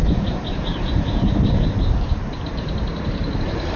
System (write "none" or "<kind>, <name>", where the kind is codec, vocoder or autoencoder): vocoder, BigVGAN v2